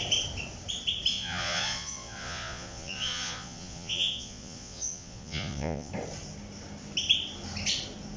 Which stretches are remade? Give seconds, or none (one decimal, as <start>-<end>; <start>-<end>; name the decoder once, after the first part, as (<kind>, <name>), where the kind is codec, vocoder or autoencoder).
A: 1.1-5.9 (vocoder, Vocos)